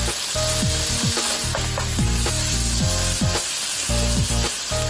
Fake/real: real